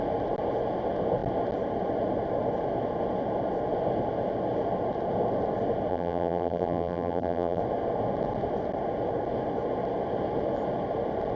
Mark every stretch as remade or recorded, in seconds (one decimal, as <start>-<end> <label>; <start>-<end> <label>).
0.0-5.9 recorded; 5.9-7.6 remade; 7.6-11.4 recorded